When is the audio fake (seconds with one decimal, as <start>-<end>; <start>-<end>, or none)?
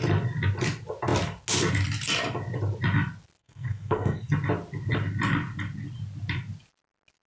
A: 3.4-4.3